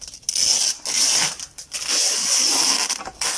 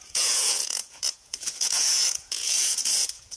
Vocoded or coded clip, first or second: second